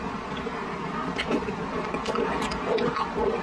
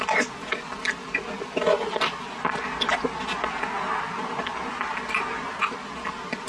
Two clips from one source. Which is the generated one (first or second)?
first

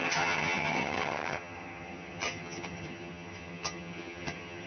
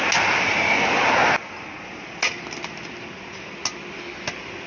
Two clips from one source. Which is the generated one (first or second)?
first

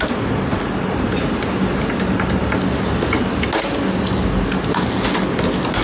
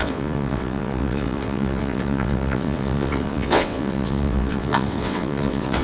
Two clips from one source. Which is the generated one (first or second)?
second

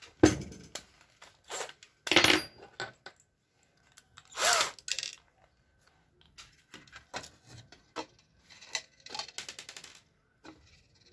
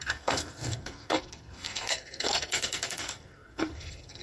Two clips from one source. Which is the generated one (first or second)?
second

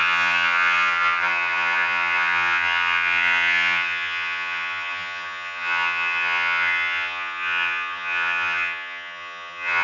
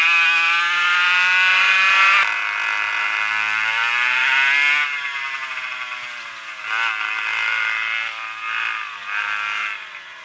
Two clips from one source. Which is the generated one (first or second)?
first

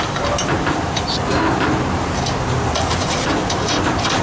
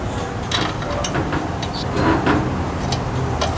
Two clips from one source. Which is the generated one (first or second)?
first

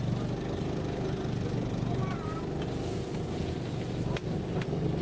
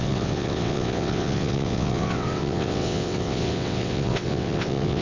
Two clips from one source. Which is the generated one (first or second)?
second